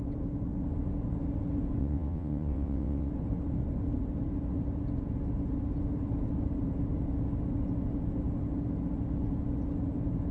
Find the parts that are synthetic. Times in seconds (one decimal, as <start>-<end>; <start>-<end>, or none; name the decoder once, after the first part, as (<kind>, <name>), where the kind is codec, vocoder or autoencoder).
1.8-3.1 (vocoder, WaveNeXt)